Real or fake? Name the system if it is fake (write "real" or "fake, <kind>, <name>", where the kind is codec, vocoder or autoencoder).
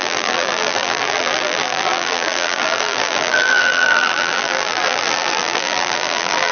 fake, vocoder, BigVGAN v2